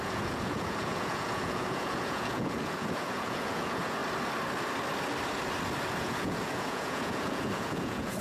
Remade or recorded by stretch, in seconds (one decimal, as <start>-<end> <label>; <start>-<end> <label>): 0.0-4.0 remade; 4.0-6.0 recorded; 6.0-8.2 remade